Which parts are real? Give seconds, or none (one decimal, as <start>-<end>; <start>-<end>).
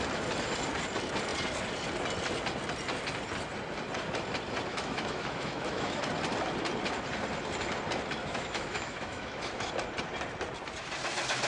0.0-4.7; 6.0-8.2; 9.7-11.5